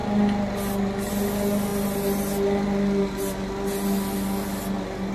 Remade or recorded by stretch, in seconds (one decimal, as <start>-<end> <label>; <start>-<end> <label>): 0.0-5.1 recorded